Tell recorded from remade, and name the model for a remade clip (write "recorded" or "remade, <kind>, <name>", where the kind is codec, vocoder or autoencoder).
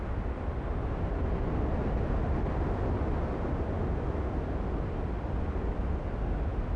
recorded